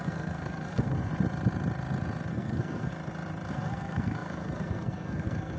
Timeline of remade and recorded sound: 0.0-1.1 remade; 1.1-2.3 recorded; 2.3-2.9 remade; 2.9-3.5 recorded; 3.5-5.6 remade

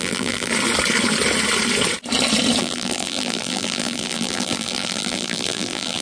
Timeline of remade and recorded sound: 0.0-0.5 remade; 0.5-2.6 recorded; 2.6-6.0 remade

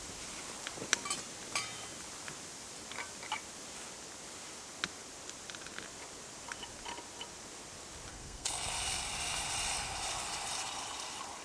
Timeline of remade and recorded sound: 0.0-8.1 recorded; 8.1-8.7 remade; 8.7-11.4 recorded

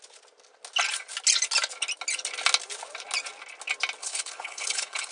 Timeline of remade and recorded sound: 0.0-4.0 recorded; 4.0-5.1 remade

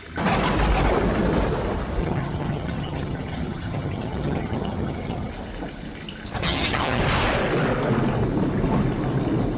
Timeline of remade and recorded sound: 0.0-2.0 recorded; 2.0-5.3 remade; 5.3-6.4 recorded; 6.4-7.0 remade; 7.0-9.6 recorded

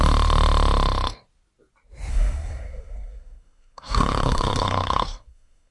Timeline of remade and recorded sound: 0.0-2.1 recorded; 2.1-5.7 remade